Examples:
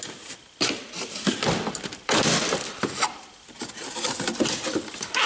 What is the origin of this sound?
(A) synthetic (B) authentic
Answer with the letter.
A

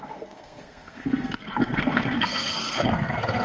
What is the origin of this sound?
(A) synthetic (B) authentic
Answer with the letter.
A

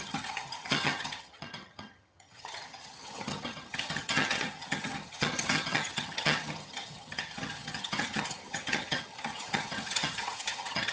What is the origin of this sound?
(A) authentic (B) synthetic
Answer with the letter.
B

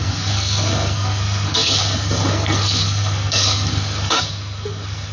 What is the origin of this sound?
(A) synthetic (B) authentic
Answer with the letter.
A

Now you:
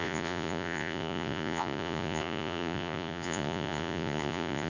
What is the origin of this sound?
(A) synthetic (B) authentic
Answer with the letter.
A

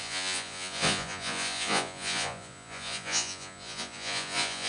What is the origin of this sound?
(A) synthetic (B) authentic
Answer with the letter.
A